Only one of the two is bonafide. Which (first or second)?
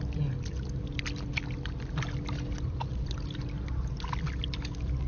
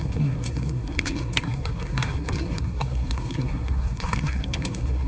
first